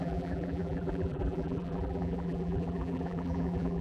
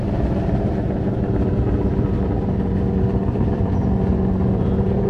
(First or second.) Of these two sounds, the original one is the second